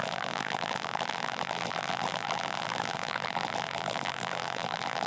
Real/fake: fake